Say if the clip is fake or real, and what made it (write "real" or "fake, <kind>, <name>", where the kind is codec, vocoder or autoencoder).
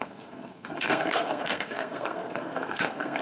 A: fake, codec, SNAC